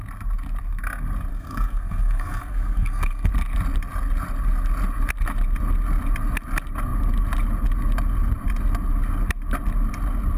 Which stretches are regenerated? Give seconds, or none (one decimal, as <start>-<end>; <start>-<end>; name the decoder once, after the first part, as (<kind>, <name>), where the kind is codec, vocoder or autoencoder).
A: 1.3-3.3 (codec, SNAC)